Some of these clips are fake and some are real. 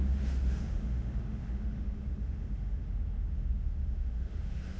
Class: fake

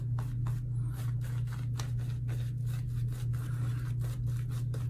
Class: real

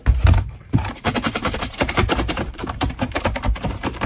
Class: fake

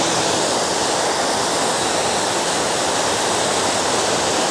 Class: real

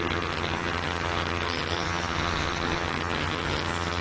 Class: fake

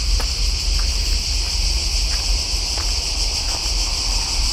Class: real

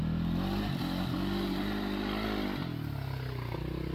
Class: real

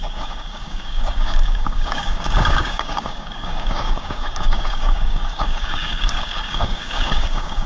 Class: fake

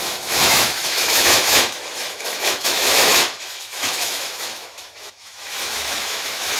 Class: fake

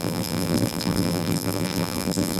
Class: fake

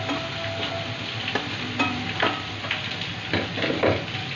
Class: real